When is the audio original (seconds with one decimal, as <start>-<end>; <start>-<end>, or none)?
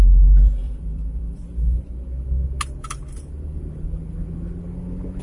0.0-0.6; 1.4-5.2